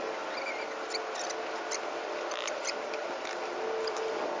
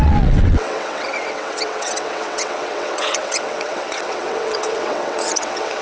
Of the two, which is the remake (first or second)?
second